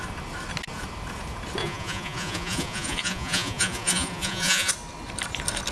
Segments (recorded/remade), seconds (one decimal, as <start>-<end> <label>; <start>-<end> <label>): 0.0-1.6 recorded; 1.6-4.7 remade; 4.7-5.7 recorded